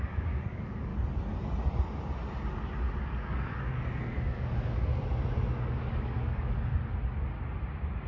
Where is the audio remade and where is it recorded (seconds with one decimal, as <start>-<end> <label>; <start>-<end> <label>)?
0.0-0.9 remade; 0.9-3.0 recorded; 3.0-4.9 remade; 4.9-5.6 recorded; 5.6-6.7 remade; 6.7-8.1 recorded